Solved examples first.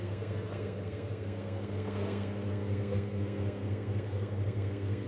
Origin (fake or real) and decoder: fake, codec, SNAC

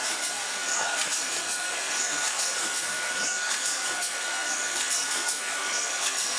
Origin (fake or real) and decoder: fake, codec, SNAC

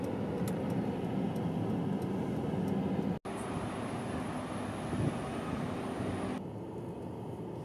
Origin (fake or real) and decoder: real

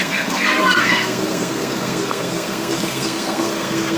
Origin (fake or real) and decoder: fake, codec, SNAC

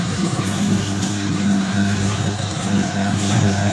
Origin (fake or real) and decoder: fake, codec, SNAC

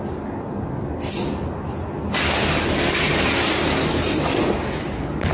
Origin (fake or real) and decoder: real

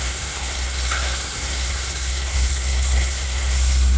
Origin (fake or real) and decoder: fake, codec, SNAC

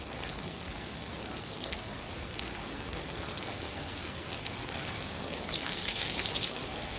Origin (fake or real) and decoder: fake, codec, SNAC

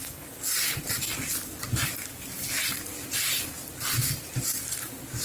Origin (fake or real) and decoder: real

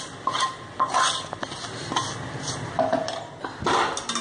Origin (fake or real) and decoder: real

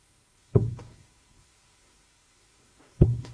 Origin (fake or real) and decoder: fake, codec, SNAC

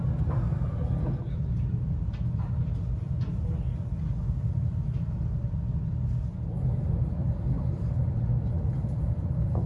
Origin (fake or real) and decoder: real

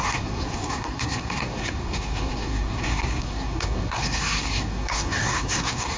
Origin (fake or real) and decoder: fake, codec, SNAC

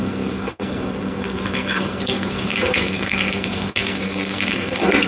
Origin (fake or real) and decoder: fake, codec, SNAC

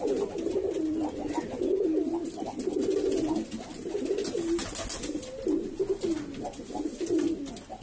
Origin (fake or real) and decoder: real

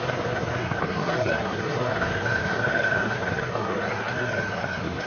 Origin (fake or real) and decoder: fake, codec, SNAC